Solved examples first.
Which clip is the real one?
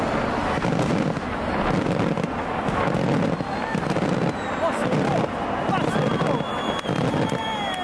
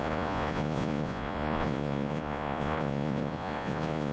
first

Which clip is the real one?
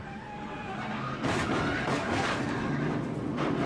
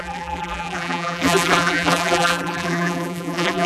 first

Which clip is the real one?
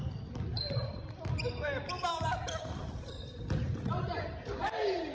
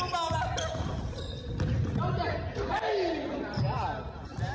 second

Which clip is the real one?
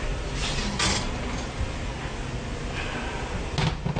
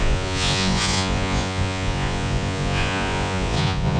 first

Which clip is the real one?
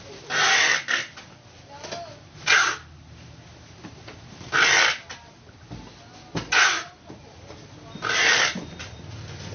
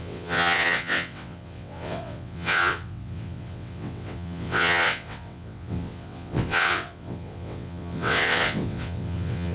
first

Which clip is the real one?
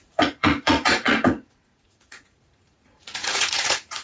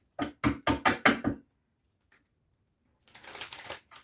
second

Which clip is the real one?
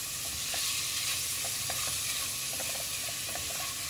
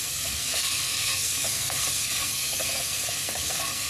first